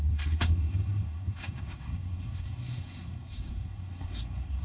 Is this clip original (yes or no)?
no